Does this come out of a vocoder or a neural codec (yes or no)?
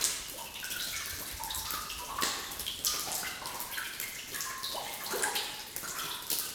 no